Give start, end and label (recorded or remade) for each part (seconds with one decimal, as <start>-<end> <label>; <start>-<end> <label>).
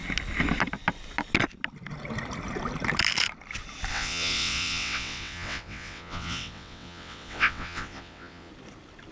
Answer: 0.0-3.9 recorded; 3.9-8.5 remade; 8.5-9.1 recorded